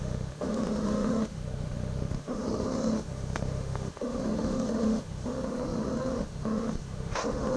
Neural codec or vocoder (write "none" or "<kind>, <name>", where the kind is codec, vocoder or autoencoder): autoencoder, DAC-VAE